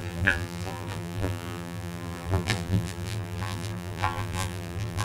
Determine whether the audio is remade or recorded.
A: remade